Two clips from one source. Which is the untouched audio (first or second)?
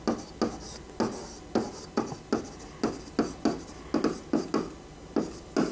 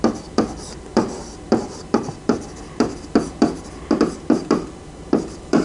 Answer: first